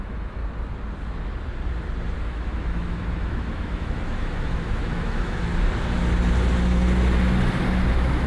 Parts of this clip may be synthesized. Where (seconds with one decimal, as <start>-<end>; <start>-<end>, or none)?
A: 0.0-0.4; 2.2-5.5; 7.9-8.3